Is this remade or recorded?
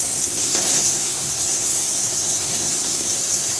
remade